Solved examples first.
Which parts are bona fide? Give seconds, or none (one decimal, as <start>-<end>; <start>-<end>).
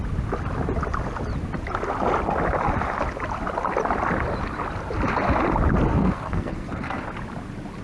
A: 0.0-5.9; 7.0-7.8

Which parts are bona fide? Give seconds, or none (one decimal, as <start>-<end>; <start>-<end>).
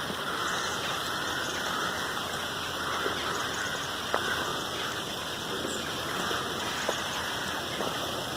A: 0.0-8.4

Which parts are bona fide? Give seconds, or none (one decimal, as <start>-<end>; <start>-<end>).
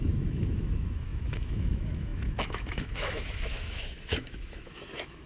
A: none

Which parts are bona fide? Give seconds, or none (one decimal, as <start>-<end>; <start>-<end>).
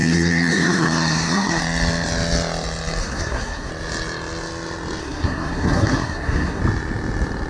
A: 1.6-3.0; 3.7-5.0; 6.6-7.5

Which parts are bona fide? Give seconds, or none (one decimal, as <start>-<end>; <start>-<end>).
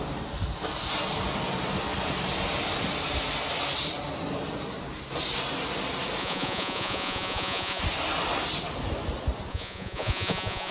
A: 0.0-6.2; 7.8-9.5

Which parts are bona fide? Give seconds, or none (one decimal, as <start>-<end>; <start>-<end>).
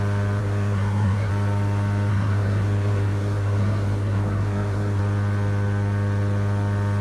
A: 0.0-0.4; 1.3-2.1; 5.0-7.0